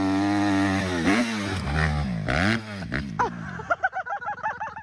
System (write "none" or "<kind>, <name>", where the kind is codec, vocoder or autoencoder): none